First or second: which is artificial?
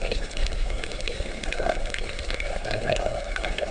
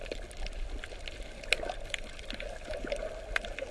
first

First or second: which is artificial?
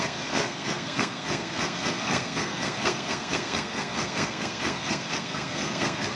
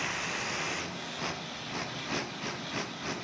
first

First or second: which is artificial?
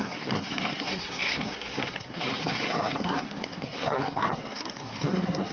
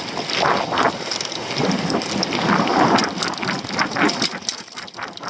first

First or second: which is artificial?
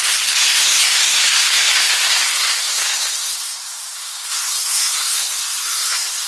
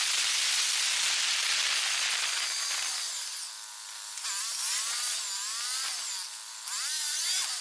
first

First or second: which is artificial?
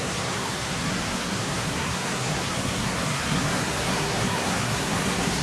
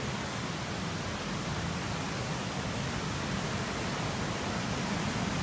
first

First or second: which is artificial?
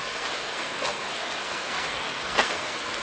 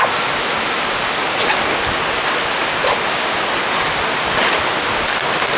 first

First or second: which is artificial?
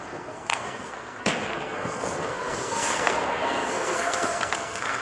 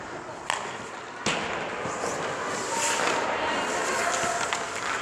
first